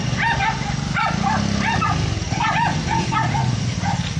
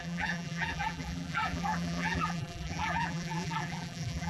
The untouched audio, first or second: first